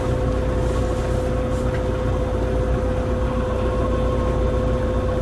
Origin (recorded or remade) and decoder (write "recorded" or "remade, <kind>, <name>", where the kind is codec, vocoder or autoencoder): recorded